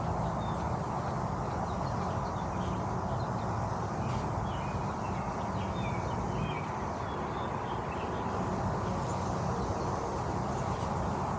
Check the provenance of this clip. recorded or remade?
recorded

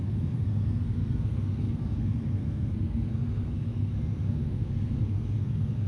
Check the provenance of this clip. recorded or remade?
remade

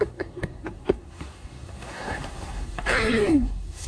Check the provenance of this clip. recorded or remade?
remade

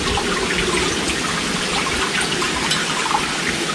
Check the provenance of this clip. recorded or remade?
recorded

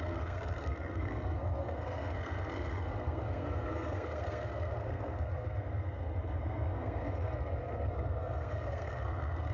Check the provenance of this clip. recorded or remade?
remade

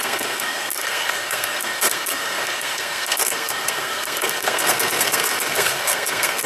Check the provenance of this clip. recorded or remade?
remade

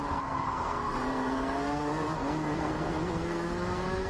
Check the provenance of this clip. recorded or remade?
remade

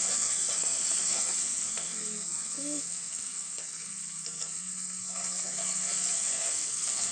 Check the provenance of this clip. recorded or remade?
remade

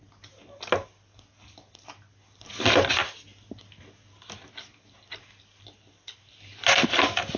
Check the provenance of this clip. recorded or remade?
recorded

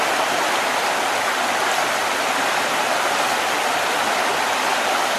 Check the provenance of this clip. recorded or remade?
recorded